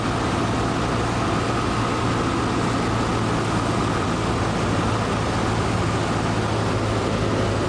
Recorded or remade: recorded